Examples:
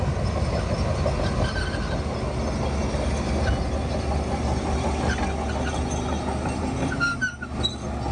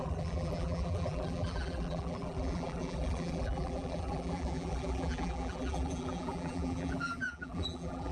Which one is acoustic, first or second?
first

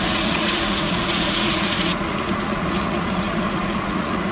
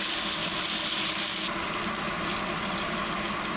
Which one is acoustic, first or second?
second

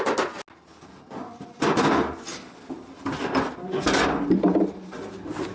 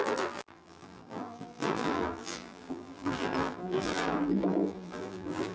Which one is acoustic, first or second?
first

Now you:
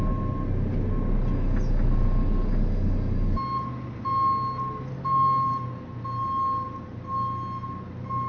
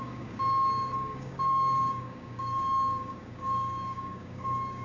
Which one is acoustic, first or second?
first